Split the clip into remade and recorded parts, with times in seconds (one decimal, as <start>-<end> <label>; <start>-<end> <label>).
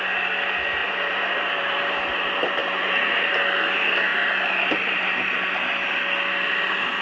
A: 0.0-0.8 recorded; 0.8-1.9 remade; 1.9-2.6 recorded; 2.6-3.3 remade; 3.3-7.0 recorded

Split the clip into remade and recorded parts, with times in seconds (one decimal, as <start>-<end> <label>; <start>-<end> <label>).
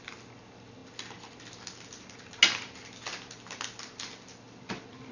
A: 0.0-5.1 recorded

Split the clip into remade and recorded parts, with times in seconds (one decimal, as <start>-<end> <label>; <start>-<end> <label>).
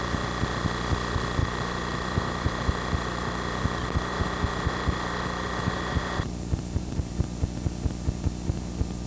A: 0.0-1.4 recorded; 1.4-3.6 remade; 3.6-4.1 recorded; 4.1-7.1 remade; 7.1-9.1 recorded